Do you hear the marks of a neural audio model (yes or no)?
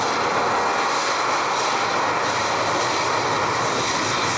no